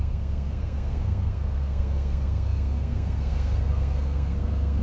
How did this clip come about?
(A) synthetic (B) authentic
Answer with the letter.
A